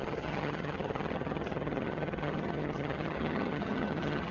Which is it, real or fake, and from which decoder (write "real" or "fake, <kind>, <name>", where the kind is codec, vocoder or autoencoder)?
fake, vocoder, HiFi-GAN